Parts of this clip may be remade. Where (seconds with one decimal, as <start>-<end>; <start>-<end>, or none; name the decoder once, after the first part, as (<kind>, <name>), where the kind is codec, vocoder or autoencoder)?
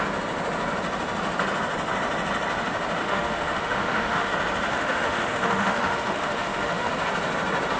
3.0-4.3 (autoencoder, DAC-VAE); 4.7-6.9